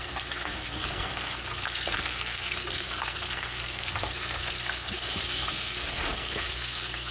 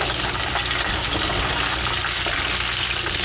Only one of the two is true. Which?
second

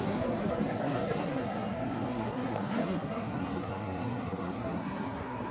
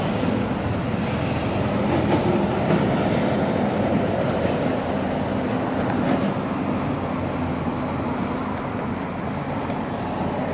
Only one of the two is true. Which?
second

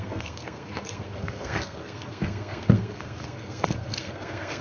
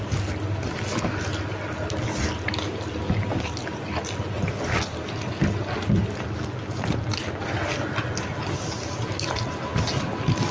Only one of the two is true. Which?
second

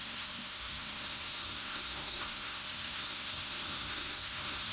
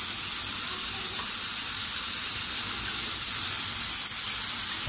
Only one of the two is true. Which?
second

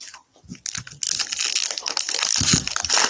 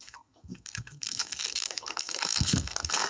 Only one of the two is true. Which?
first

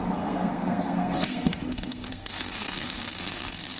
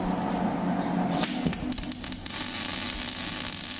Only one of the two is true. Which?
second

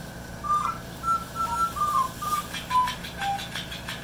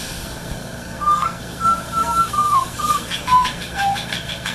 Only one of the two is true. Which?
first